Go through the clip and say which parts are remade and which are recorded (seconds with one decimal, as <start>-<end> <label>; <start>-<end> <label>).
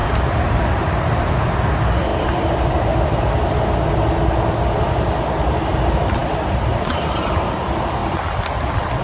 0.0-1.3 remade; 1.3-2.1 recorded; 2.1-3.2 remade; 3.2-9.0 recorded